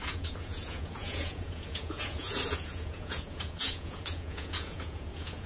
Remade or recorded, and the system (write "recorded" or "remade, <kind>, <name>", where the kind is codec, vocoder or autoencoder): remade, vocoder, Vocos